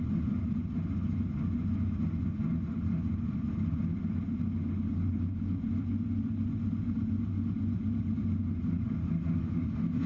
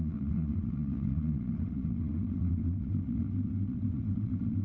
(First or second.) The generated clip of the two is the second